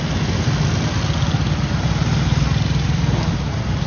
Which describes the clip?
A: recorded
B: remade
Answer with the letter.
A